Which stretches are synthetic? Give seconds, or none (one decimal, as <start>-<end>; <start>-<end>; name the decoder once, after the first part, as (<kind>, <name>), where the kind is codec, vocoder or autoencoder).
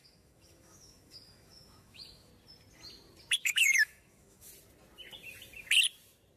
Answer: 0.0-2.3 (autoencoder, DAC-VAE); 3.4-4.5